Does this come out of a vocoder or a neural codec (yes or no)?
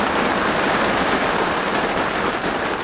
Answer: no